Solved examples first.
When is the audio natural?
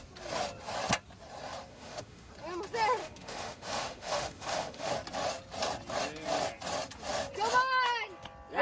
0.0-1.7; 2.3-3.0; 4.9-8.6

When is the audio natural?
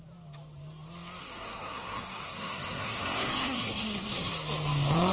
0.0-1.2; 4.3-5.1